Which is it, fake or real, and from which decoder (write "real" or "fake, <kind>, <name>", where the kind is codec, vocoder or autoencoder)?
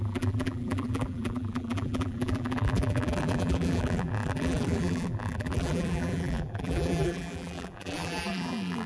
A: fake, vocoder, BigVGAN v2